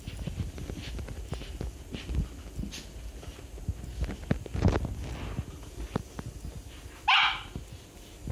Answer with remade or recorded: recorded